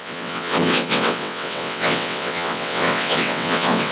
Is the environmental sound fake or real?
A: fake